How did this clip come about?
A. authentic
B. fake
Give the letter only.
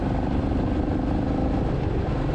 A